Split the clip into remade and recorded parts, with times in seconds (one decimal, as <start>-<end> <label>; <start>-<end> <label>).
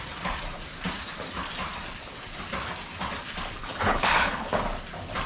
0.0-3.6 recorded; 3.6-4.6 remade; 4.6-5.3 recorded